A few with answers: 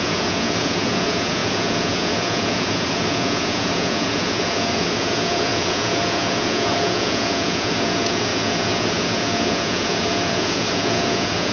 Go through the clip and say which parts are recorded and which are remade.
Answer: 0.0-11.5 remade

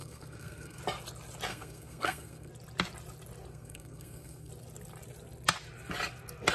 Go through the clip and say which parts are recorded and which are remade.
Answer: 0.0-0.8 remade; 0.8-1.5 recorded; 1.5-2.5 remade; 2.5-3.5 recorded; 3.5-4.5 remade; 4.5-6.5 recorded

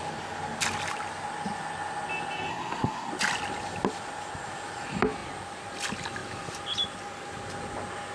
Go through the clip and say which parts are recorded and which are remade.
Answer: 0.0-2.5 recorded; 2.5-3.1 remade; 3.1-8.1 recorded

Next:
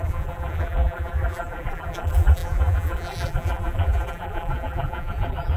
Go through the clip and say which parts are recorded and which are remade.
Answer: 0.0-5.6 remade

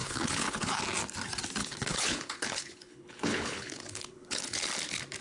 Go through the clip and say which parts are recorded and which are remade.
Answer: 0.0-0.8 remade; 0.8-1.6 recorded; 1.6-4.7 remade; 4.7-5.2 recorded